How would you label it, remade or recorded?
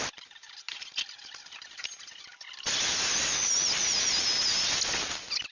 recorded